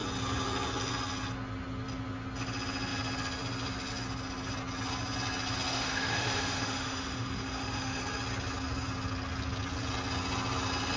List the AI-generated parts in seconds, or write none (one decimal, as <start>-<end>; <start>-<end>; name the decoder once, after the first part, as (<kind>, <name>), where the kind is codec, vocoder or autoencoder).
5.7-8.0 (autoencoder, DAC-VAE)